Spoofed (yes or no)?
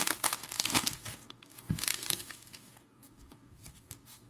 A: yes